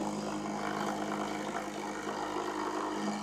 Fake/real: real